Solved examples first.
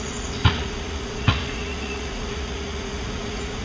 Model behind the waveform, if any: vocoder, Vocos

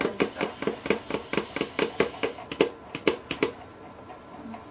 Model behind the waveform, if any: none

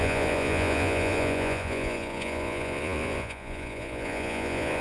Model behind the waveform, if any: vocoder, Vocos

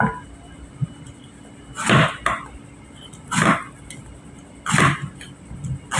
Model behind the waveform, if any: none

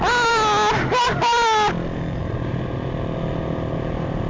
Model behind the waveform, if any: none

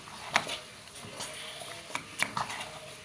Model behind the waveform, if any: none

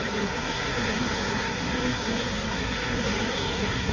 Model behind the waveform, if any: codec, SNAC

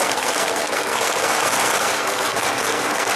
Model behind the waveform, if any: codec, SNAC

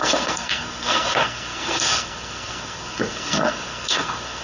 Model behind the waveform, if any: codec, SNAC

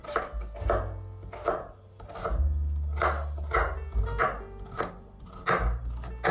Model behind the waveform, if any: none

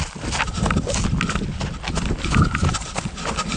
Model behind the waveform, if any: none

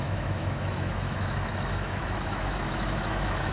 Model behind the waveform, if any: autoencoder, DAC-VAE